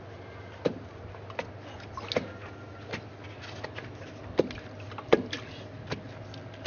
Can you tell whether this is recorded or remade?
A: recorded